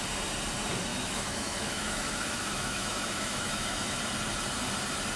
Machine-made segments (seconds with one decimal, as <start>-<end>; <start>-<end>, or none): 0.9-4.0